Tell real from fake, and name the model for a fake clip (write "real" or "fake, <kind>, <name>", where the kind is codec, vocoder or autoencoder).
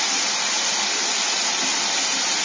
real